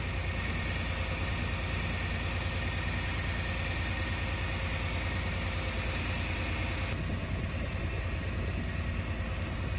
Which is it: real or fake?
real